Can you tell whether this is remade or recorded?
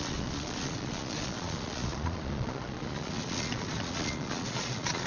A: remade